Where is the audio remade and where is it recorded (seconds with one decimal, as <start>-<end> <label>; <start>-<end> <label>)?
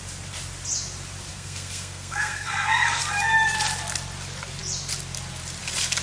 0.0-1.3 recorded; 1.3-3.0 remade; 3.0-6.0 recorded